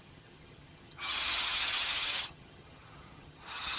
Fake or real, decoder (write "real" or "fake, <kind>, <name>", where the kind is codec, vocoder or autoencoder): fake, vocoder, HiFi-GAN